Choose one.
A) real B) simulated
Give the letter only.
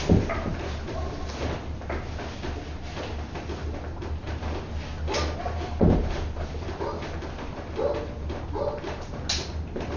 A